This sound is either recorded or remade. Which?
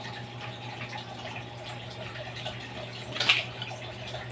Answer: recorded